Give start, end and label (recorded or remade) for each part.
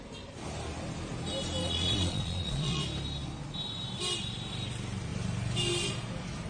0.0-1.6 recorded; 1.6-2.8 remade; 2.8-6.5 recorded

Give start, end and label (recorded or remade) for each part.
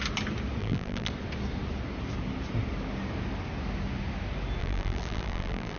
0.0-0.6 recorded; 0.6-1.1 remade; 1.1-4.6 recorded; 4.6-5.8 remade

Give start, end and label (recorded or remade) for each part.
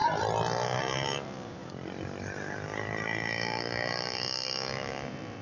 0.0-5.4 recorded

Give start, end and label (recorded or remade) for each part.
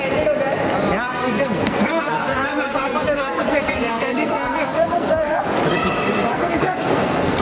0.0-1.2 recorded; 1.2-5.4 remade; 5.4-6.3 recorded; 6.3-7.4 remade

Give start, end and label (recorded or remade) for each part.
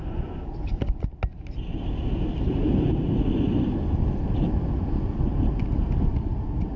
0.0-0.5 remade; 0.5-6.8 recorded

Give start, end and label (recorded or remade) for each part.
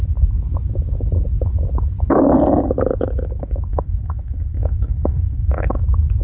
0.0-3.7 recorded; 3.7-5.8 remade; 5.8-6.2 recorded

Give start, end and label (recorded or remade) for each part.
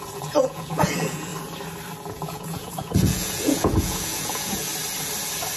0.0-1.3 remade; 1.3-2.1 recorded; 2.1-4.7 remade; 4.7-5.6 recorded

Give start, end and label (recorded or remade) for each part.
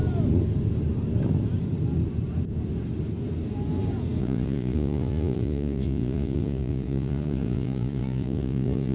0.0-4.2 recorded; 4.2-8.9 remade